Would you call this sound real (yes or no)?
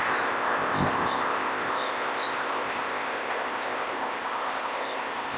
no